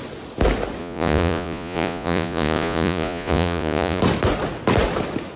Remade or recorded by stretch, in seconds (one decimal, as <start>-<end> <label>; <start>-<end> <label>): 0.0-0.8 recorded; 0.8-4.0 remade; 4.0-5.4 recorded